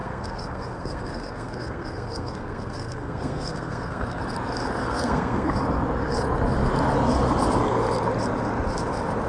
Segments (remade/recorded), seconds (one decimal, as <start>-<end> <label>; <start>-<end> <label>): 0.0-4.2 remade; 4.2-4.8 recorded; 4.8-5.5 remade; 5.5-9.3 recorded